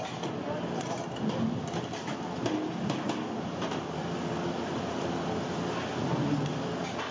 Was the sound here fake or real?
real